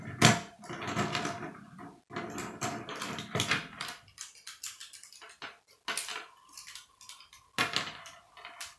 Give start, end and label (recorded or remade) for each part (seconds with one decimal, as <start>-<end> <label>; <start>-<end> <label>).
0.0-8.8 recorded